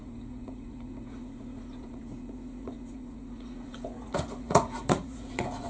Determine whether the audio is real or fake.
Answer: fake